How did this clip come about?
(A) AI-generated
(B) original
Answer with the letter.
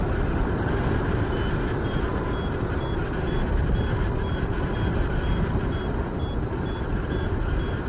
B